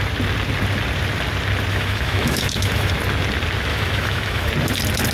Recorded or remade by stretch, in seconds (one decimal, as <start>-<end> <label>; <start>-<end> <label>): 0.0-1.7 recorded; 1.7-2.9 remade; 2.9-3.7 recorded; 3.7-4.5 remade; 4.5-5.1 recorded